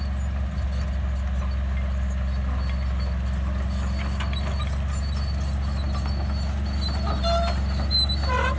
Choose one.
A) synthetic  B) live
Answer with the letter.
B